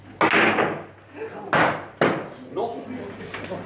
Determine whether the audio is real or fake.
real